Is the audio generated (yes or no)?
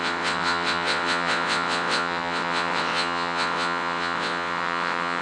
yes